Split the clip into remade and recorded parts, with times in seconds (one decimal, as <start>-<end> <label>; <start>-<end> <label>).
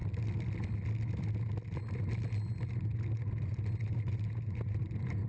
0.0-3.8 recorded; 3.8-5.3 remade